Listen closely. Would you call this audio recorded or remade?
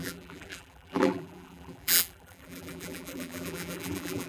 remade